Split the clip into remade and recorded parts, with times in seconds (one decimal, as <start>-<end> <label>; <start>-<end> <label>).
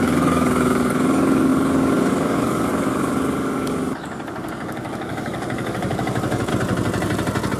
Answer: 0.0-6.5 remade; 6.5-7.6 recorded